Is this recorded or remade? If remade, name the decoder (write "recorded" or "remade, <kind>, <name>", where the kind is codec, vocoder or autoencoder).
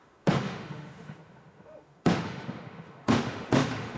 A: remade, autoencoder, DAC-VAE